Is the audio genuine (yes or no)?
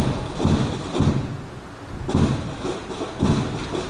yes